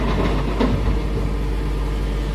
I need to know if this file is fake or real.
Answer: real